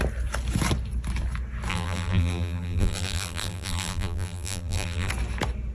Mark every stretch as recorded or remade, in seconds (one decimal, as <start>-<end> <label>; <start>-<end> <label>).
0.0-1.7 recorded; 1.7-5.1 remade; 5.1-5.7 recorded